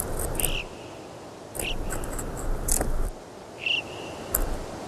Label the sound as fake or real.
real